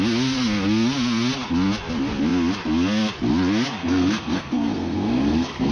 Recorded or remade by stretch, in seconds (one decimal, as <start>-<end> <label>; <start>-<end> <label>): 0.0-3.8 recorded; 3.8-5.7 remade